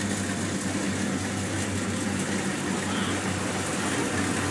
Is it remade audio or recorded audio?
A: recorded